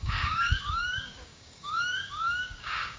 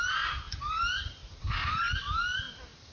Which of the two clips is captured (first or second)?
second